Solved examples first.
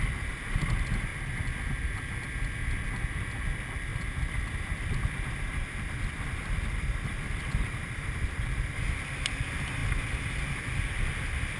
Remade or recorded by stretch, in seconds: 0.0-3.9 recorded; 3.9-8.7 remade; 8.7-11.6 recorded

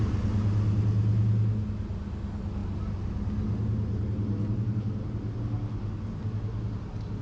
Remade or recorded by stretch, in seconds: 0.0-7.2 recorded

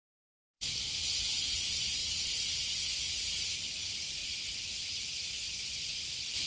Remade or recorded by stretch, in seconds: 0.0-2.0 remade; 2.0-3.5 recorded; 3.5-4.2 remade; 4.2-6.0 recorded; 6.0-6.5 remade

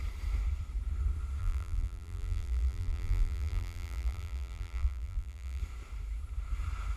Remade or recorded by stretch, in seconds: 0.0-1.4 recorded; 1.4-5.6 remade; 5.6-7.0 recorded